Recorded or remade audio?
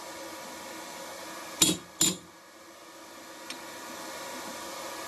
recorded